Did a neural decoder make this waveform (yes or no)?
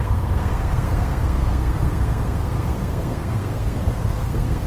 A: yes